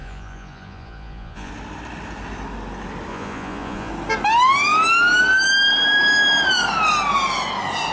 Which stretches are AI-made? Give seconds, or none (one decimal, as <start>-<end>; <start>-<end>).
0.0-1.5; 3.1-3.9